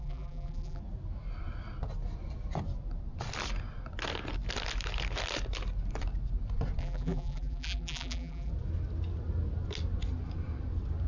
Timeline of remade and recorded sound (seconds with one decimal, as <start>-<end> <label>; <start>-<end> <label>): 0.0-0.8 remade; 0.8-6.8 recorded; 6.8-8.5 remade; 8.5-11.1 recorded